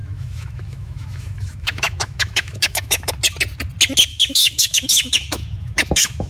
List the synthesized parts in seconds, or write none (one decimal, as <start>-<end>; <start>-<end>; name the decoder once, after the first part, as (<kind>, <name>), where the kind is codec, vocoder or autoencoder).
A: 0.0-3.1 (autoencoder, DAC-VAE); 4.1-6.3